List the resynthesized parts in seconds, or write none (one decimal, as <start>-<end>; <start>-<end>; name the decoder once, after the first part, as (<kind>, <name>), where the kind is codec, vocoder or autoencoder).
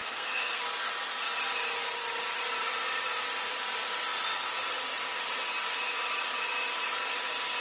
0.0-0.6 (codec, SNAC)